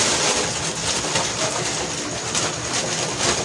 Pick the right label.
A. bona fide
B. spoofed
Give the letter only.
A